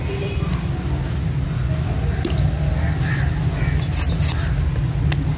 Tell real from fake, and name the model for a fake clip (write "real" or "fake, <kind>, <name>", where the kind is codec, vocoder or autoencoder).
real